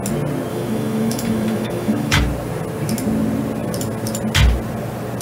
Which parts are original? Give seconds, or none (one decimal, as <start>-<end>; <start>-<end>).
0.0-0.5; 2.2-5.2